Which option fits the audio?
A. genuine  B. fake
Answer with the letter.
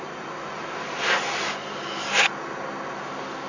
A